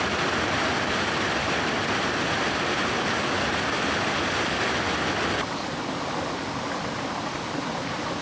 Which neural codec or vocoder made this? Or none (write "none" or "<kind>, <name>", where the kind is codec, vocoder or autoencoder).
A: none